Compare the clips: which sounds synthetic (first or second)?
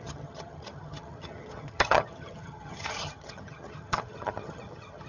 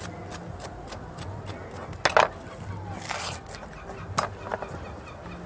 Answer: first